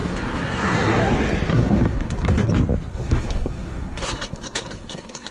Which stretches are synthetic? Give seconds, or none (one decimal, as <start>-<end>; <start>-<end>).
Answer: 0.0-1.1; 1.5-2.5; 2.9-5.3